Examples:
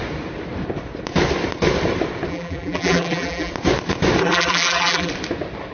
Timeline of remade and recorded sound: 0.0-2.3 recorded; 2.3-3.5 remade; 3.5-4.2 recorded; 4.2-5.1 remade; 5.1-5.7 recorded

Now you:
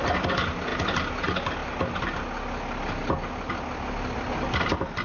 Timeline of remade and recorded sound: 0.0-5.0 recorded

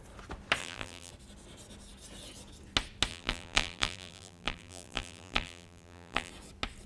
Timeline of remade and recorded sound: 0.0-0.6 recorded; 0.6-1.1 remade; 1.1-3.1 recorded; 3.1-6.3 remade; 6.3-6.9 recorded

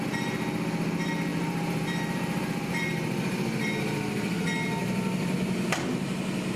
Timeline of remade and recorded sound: 0.0-1.3 recorded; 1.3-3.7 remade; 3.7-4.8 recorded; 4.8-5.8 remade; 5.8-6.6 recorded

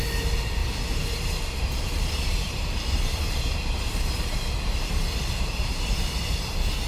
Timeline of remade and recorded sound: 0.0-0.6 recorded; 0.6-4.7 remade; 4.7-5.9 recorded; 5.9-6.4 remade; 6.4-6.9 recorded